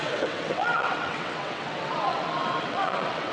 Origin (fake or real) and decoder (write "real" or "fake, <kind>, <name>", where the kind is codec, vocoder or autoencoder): fake, vocoder, WaveNeXt